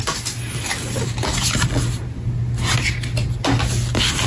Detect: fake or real real